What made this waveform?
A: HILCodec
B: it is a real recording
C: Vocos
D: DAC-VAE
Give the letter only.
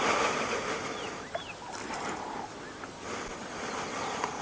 B